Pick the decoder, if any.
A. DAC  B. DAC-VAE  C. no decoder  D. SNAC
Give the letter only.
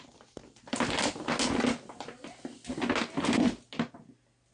C